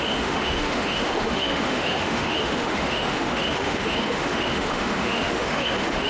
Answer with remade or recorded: remade